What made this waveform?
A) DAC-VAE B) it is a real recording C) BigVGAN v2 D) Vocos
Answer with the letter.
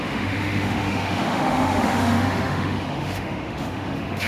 A